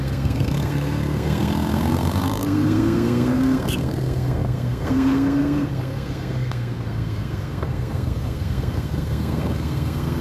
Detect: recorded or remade remade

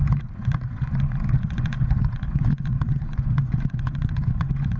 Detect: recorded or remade remade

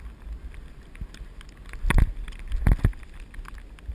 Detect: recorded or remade recorded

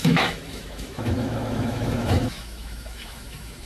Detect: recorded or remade remade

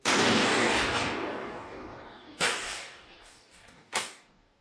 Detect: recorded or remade remade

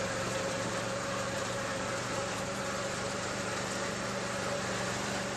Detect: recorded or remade remade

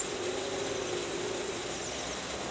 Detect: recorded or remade recorded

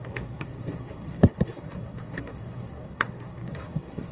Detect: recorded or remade remade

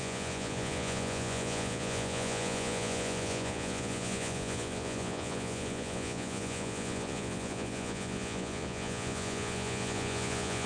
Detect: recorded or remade remade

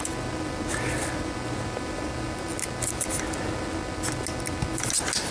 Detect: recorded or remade recorded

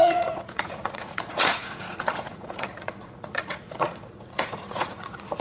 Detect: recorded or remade remade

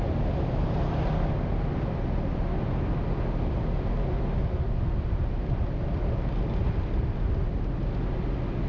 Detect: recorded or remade recorded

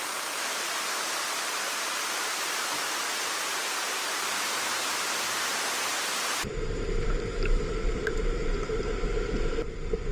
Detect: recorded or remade remade